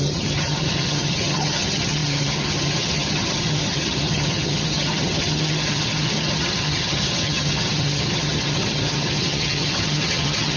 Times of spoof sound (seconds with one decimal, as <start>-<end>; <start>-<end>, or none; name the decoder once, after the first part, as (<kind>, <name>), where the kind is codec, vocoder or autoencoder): 0.0-10.6 (vocoder, HiFi-GAN)